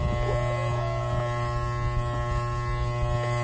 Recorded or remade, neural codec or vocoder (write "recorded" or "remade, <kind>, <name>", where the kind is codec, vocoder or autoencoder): recorded